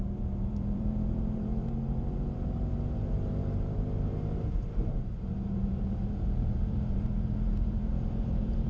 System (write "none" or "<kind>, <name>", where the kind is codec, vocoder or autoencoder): vocoder, BigVGAN v2